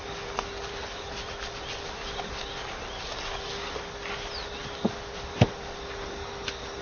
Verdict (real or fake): real